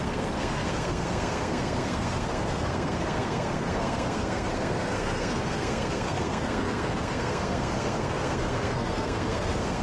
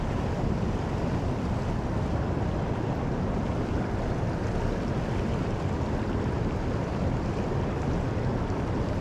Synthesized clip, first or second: first